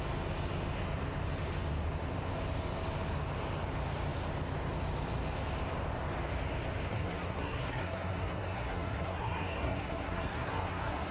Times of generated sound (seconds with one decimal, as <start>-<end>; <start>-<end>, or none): 6.9-11.1

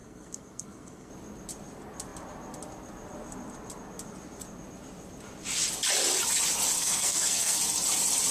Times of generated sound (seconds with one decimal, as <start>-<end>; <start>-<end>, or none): 0.0-1.1; 6.8-7.6

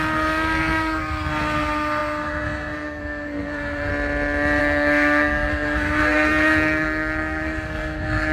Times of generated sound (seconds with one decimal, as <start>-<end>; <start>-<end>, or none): 0.0-3.9; 4.6-8.3

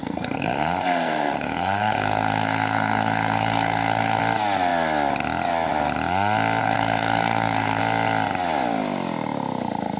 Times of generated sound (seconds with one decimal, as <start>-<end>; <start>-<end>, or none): 0.0-4.2; 6.6-7.8